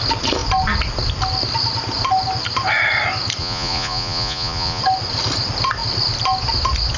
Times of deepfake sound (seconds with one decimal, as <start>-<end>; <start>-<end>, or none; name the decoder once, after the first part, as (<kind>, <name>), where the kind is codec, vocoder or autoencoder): 3.4-4.8 (vocoder, Vocos)